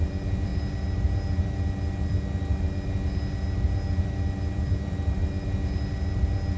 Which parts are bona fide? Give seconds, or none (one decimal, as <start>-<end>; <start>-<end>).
0.5-4.5; 5.2-6.6